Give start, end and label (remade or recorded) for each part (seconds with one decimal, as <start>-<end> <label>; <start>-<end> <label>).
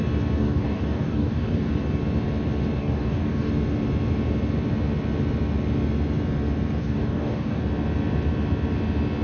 0.0-0.4 recorded; 0.4-1.7 remade; 1.7-2.8 recorded; 2.8-3.5 remade; 3.5-6.8 recorded; 6.8-7.6 remade; 7.6-9.2 recorded